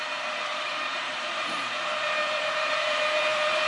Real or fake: fake